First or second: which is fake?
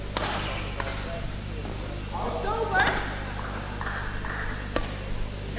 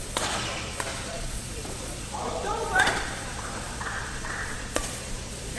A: second